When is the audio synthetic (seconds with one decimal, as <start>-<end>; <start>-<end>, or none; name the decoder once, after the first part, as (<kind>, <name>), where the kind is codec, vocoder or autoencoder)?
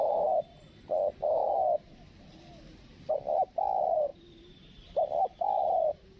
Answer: 0.0-1.4 (vocoder, BigVGAN v2); 3.1-6.2